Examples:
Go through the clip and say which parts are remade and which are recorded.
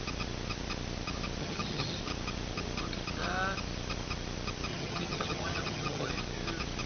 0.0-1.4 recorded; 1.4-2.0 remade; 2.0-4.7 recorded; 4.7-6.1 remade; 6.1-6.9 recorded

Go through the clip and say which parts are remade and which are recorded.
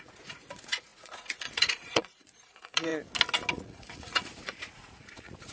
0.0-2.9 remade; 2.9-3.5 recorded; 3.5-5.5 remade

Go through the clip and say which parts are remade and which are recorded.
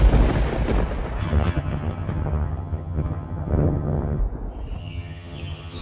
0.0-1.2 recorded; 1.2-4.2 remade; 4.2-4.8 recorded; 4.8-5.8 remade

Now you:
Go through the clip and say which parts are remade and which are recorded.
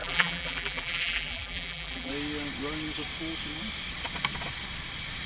0.0-2.1 remade; 2.1-5.3 recorded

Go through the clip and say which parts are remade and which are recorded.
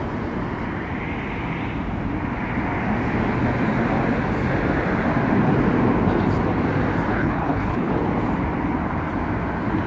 0.0-7.1 recorded; 7.1-7.9 remade; 7.9-9.9 recorded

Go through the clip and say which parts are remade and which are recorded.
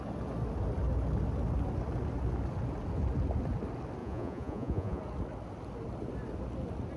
0.0-4.0 recorded; 4.0-5.0 remade; 5.0-7.0 recorded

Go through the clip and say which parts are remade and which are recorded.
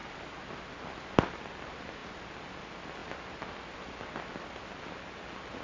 0.0-5.6 recorded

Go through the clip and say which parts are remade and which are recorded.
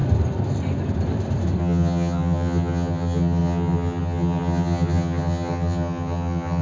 0.0-1.6 recorded; 1.6-6.6 remade